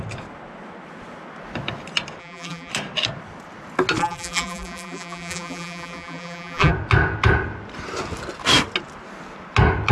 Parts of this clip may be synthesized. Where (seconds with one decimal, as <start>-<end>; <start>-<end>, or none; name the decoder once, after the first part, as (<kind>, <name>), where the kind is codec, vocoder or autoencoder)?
2.2-2.7 (vocoder, BigVGAN v2); 4.0-6.7